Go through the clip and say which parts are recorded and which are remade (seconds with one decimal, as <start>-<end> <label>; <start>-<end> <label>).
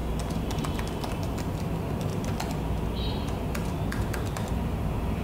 0.0-1.1 recorded; 1.1-2.1 remade; 2.1-3.1 recorded; 3.1-5.2 remade